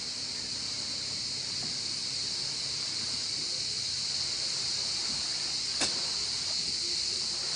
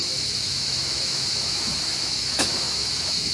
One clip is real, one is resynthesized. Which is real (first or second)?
first